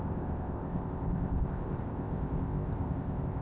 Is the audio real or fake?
fake